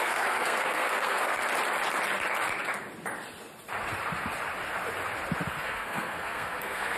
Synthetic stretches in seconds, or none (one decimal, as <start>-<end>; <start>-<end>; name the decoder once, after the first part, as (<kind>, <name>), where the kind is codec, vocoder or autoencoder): 0.0-1.3 (codec, SNAC); 5.5-7.0